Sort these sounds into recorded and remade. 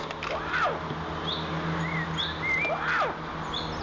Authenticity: recorded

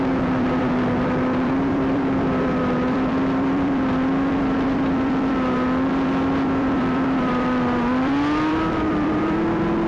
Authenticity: remade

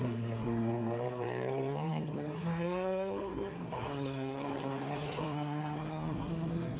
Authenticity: remade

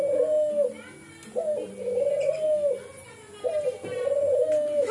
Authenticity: recorded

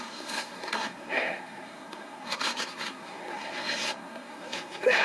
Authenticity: remade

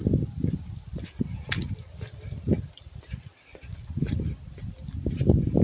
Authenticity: recorded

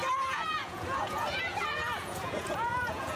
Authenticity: remade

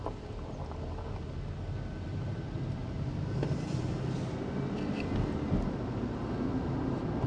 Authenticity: recorded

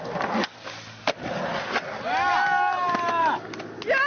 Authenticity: recorded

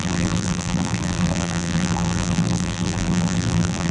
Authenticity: remade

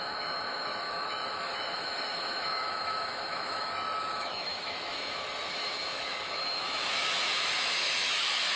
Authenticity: remade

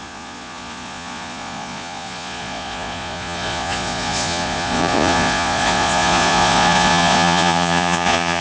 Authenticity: remade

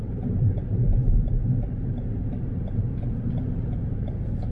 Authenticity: remade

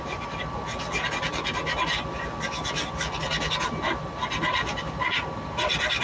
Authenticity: recorded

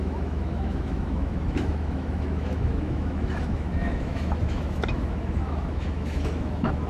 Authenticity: remade